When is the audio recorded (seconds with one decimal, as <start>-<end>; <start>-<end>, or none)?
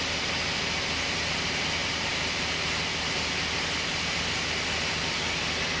0.0-1.8; 2.3-5.8